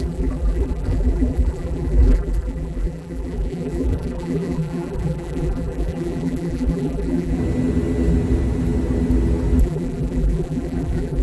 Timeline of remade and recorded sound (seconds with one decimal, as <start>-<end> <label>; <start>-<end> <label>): 0.0-7.4 remade; 7.4-9.6 recorded; 9.6-11.2 remade